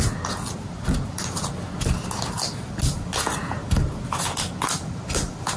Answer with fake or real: real